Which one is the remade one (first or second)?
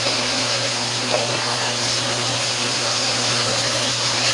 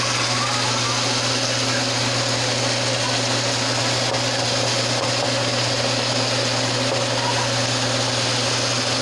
first